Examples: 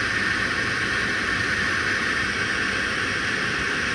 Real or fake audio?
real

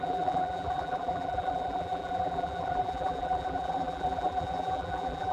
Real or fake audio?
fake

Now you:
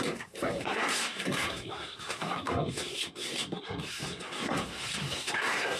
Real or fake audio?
fake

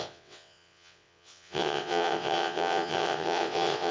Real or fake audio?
fake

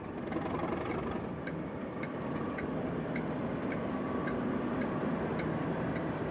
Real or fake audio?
fake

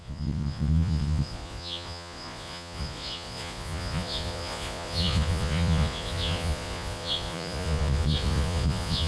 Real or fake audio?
fake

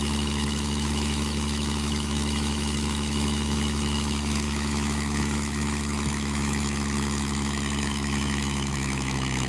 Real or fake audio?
fake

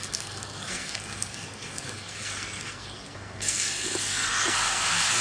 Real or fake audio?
fake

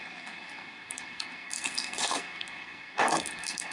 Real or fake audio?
fake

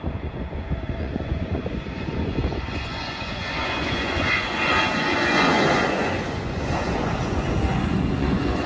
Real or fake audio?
fake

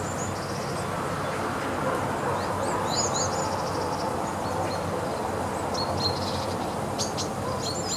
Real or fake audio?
real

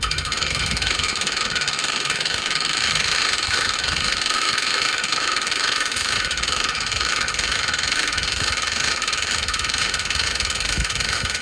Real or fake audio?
fake